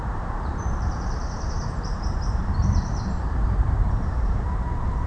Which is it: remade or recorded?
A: remade